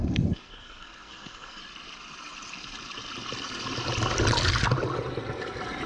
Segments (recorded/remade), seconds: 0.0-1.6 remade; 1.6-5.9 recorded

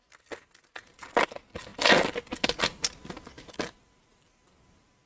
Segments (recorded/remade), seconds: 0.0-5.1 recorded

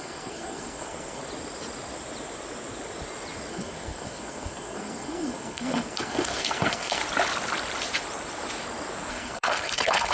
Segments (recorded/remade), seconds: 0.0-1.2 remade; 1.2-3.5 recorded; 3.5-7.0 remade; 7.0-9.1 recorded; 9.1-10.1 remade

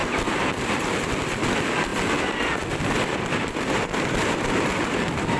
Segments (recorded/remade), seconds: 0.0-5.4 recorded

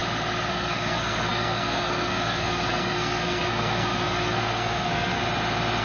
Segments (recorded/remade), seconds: 0.0-0.5 recorded; 0.5-5.2 remade; 5.2-5.8 recorded